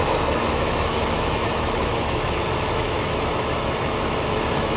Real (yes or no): no